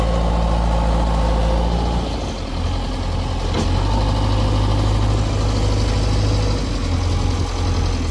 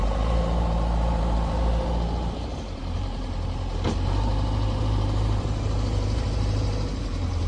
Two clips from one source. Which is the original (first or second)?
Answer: first